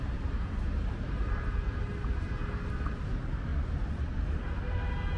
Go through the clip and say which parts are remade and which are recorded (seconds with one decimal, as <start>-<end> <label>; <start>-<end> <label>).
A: 0.0-2.4 remade; 2.4-3.0 recorded; 3.0-3.5 remade; 3.5-4.2 recorded; 4.2-5.2 remade